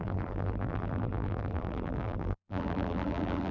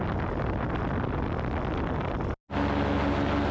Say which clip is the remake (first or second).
first